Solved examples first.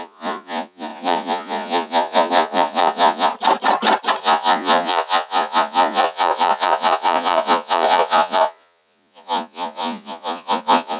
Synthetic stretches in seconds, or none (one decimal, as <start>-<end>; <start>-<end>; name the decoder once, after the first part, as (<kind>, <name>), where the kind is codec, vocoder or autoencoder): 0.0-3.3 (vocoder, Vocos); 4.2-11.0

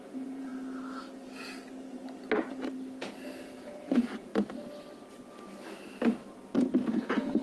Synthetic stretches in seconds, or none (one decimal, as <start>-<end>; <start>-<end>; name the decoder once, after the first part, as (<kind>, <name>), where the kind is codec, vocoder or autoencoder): 0.0-0.5 (vocoder, Vocos); 3.4-4.3; 6.9-7.4

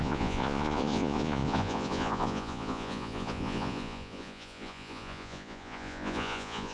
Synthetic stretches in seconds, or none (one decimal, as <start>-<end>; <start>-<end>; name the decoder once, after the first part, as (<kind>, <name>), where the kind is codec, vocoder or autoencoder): 0.0-6.7 (vocoder, Vocos)

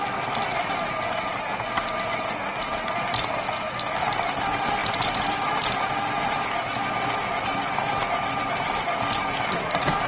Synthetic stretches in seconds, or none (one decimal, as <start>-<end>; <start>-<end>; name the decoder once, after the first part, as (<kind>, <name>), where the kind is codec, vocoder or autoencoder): none